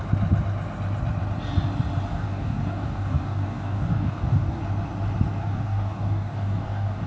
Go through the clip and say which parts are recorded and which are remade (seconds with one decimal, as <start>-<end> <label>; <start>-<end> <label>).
0.0-2.1 recorded; 2.1-4.6 remade; 4.6-5.4 recorded; 5.4-7.1 remade